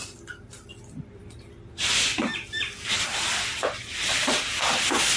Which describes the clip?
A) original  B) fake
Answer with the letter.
A